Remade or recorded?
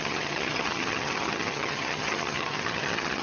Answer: remade